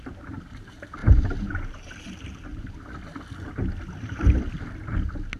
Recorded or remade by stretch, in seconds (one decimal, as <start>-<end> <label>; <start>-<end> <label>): 0.0-2.5 remade; 2.5-5.4 recorded